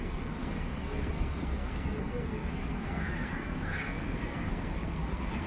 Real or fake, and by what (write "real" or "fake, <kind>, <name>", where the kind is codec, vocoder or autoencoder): fake, codec, SNAC